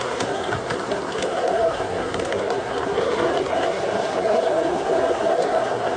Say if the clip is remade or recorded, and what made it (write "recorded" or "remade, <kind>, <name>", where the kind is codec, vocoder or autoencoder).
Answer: remade, codec, SNAC